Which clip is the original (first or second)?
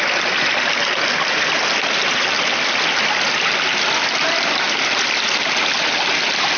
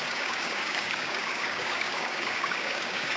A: first